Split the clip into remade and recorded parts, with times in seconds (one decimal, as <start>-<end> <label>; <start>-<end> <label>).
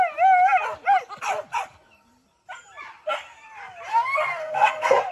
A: 0.0-3.9 recorded; 3.9-5.1 remade